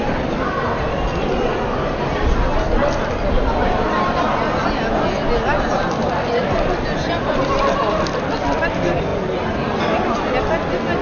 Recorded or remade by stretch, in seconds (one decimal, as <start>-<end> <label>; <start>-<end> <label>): 0.0-11.0 recorded